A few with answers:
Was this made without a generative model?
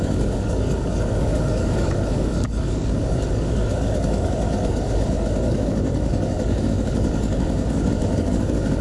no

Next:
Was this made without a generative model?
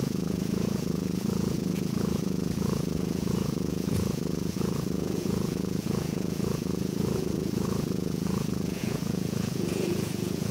no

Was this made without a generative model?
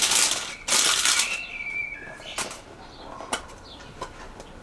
yes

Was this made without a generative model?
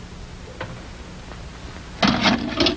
yes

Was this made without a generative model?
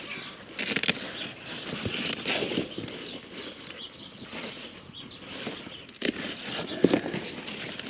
yes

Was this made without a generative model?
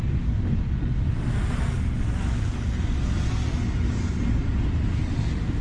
yes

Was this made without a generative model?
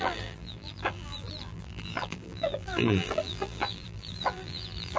no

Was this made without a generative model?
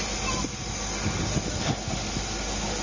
yes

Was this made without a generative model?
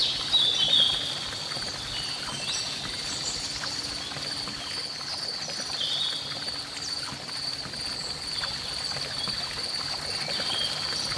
yes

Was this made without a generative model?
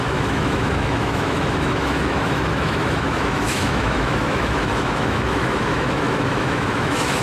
no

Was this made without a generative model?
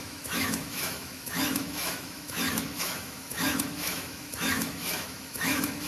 no